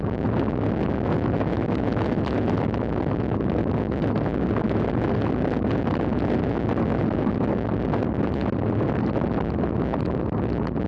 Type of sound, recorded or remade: recorded